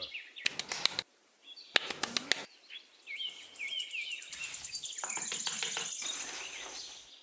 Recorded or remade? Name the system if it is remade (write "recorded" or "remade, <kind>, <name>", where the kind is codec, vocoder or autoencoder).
recorded